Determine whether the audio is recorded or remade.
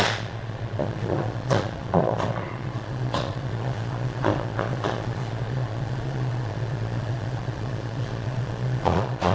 remade